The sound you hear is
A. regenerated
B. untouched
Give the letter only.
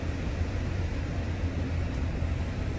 B